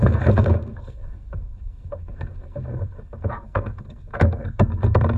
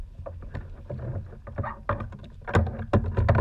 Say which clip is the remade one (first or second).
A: first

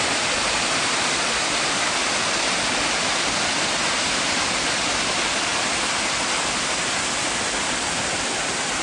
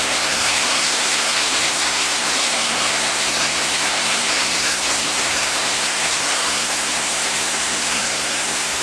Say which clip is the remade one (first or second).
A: second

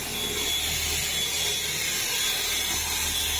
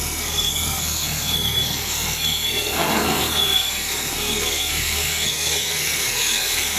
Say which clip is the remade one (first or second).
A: second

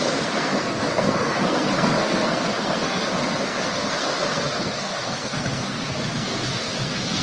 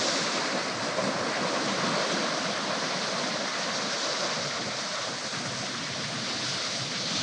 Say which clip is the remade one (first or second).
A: first